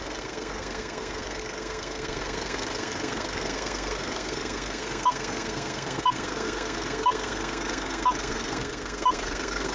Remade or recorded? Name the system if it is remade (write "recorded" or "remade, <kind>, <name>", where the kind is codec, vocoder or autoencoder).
remade, codec, SNAC